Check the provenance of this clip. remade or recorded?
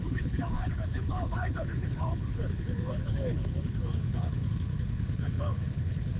remade